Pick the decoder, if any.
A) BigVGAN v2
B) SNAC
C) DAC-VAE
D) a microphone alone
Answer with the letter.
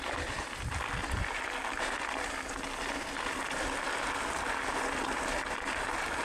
D